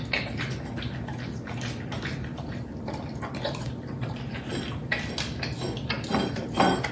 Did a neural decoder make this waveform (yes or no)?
no